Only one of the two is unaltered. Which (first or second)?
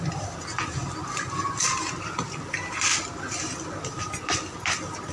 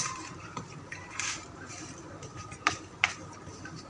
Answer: first